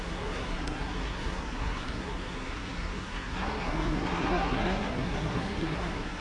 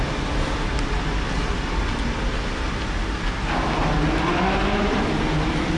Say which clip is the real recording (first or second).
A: second